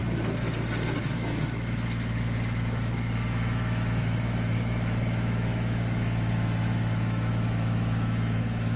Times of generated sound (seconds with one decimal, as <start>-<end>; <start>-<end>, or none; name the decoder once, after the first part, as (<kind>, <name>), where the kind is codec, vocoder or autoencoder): 1.0-8.8 (autoencoder, DAC-VAE)